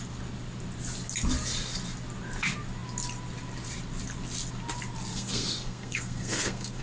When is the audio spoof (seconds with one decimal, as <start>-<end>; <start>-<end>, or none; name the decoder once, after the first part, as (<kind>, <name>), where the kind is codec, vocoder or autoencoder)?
5.1-6.8 (codec, SNAC)